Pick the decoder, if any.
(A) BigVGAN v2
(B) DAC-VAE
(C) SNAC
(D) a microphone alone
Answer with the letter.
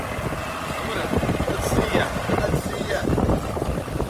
D